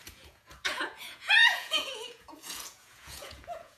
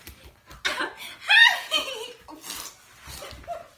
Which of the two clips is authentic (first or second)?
second